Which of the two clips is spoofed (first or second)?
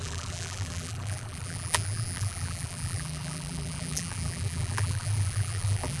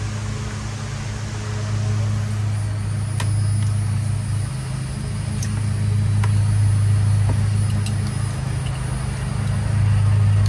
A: first